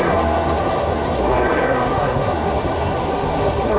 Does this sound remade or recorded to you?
remade